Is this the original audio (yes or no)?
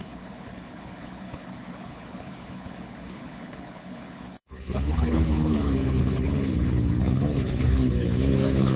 no